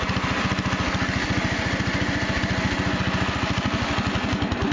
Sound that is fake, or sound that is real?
real